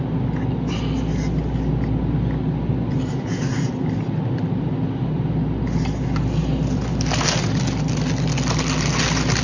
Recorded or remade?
recorded